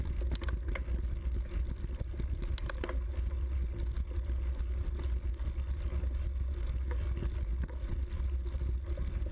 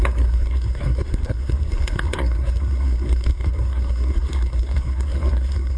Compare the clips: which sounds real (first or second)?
first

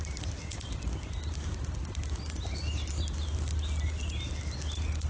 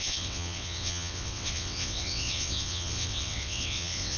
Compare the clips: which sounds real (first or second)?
first